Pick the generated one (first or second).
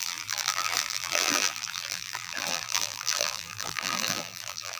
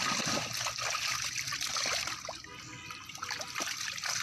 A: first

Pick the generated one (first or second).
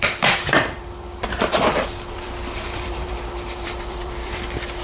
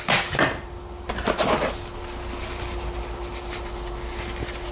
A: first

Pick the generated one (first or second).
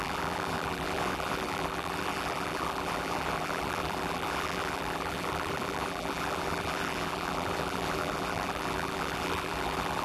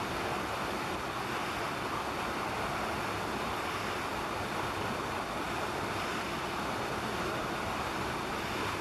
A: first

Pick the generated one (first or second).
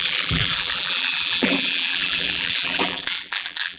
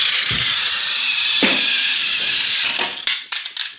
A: first